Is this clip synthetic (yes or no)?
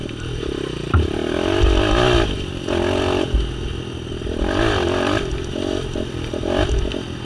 no